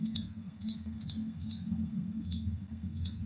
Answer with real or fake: fake